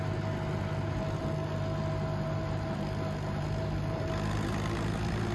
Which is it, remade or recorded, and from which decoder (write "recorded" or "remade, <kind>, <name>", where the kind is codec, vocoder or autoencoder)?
recorded